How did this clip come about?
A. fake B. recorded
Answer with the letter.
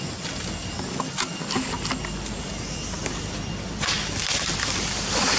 B